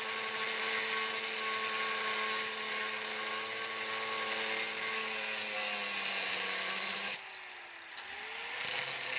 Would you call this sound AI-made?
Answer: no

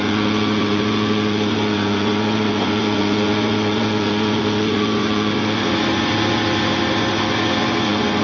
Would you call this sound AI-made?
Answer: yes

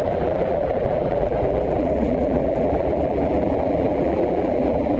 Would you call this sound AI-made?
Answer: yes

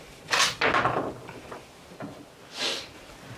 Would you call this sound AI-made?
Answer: no